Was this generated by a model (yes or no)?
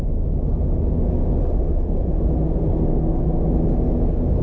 no